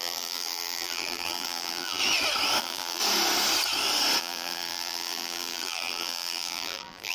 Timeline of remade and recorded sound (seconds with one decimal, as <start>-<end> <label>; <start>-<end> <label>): 0.0-2.0 remade; 2.0-2.6 recorded; 2.6-3.0 remade; 3.0-4.2 recorded; 4.2-7.1 remade

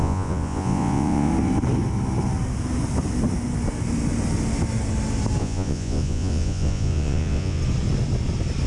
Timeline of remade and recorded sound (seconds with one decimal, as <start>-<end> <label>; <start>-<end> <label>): 0.0-1.3 remade; 1.3-5.4 recorded; 5.4-7.6 remade; 7.6-8.7 recorded

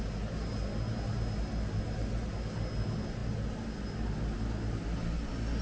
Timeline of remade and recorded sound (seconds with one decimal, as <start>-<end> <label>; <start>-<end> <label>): 0.0-5.6 recorded